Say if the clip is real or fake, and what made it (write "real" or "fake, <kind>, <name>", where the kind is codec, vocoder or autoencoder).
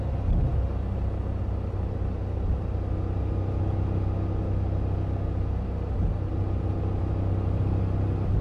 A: real